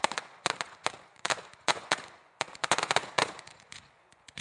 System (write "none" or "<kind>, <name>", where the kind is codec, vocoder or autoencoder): vocoder, Vocos